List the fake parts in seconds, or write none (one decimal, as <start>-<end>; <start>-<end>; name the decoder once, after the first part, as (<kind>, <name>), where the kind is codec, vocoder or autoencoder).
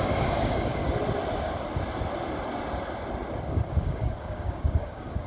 0.0-0.8 (codec, DAC); 3.5-5.3